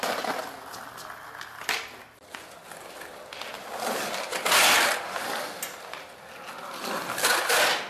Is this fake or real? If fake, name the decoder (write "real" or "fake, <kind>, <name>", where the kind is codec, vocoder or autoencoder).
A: real